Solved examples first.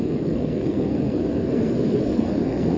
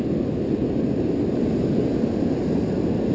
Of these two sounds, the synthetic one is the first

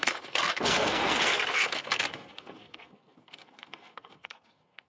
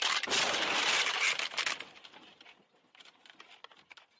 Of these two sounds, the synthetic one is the first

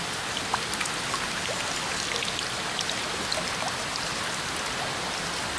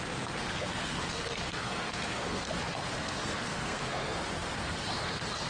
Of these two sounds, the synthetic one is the second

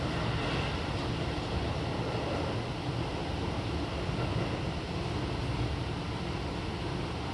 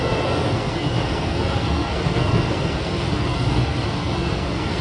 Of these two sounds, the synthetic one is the second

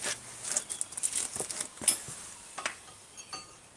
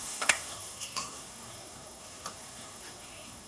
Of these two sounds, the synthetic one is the second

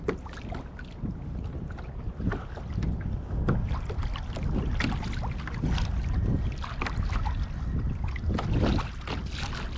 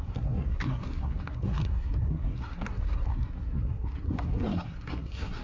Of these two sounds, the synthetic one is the second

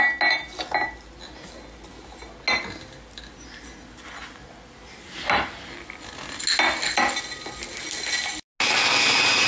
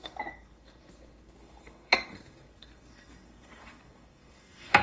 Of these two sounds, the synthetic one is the second